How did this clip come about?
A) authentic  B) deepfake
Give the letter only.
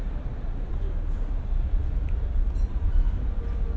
A